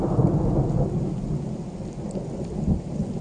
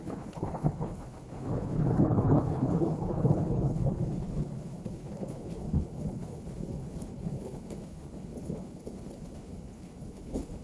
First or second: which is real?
first